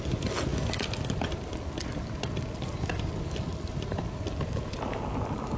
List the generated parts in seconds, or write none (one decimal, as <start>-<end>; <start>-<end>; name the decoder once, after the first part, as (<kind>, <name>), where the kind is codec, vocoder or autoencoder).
none